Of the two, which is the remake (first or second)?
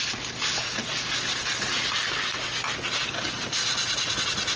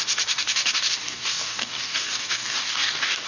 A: second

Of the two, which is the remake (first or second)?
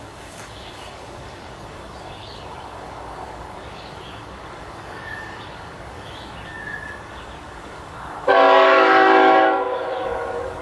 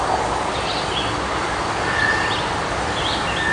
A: first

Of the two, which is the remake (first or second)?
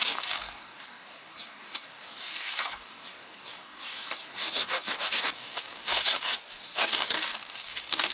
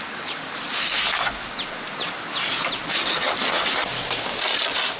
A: first